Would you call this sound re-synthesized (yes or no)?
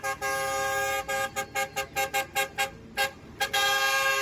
no